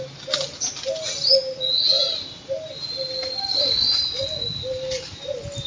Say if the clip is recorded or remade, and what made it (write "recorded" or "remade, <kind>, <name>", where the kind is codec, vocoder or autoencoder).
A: recorded